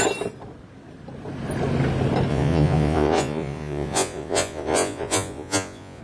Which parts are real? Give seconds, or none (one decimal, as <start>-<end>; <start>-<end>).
0.0-2.3